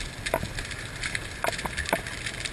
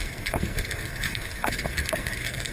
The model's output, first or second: second